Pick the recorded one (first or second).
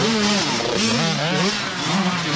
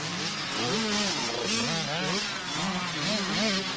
second